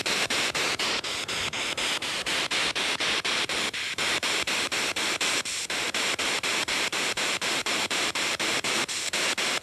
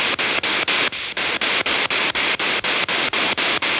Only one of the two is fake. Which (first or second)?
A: first